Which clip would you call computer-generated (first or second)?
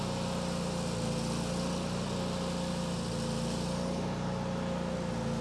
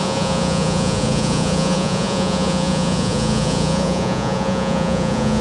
second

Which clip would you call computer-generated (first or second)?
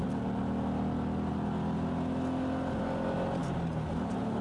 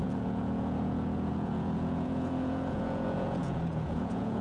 second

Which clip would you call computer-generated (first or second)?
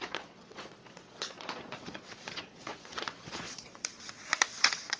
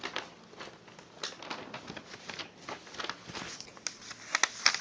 first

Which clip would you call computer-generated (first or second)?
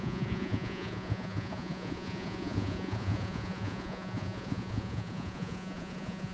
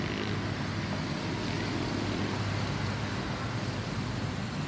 first